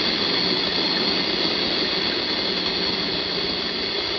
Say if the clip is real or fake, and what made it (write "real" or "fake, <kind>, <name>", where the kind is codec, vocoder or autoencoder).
real